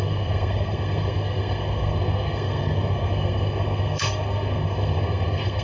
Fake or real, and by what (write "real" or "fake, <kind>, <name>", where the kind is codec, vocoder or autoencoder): fake, codec, SNAC